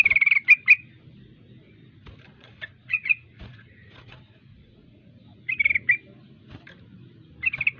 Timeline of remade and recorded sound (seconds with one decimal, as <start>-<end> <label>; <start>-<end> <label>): 0.0-2.3 recorded; 2.3-5.1 remade; 5.1-7.8 recorded